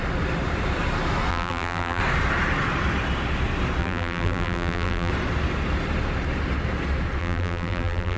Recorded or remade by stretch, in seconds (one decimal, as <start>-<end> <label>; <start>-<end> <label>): 0.0-1.3 recorded; 1.3-2.0 remade; 2.0-3.8 recorded; 3.8-5.1 remade; 5.1-7.2 recorded; 7.2-8.2 remade